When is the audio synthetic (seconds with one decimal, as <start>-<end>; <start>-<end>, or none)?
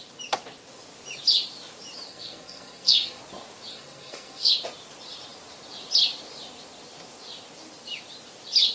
2.1-3.2; 3.7-4.5